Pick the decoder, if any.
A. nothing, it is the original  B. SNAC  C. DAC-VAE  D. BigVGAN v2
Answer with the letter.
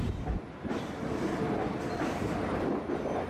A